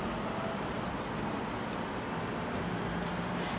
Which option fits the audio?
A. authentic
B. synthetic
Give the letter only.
A